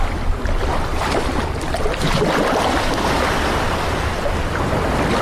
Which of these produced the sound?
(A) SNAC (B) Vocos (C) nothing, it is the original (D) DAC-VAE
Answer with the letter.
C